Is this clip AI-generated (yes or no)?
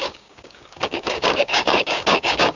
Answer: yes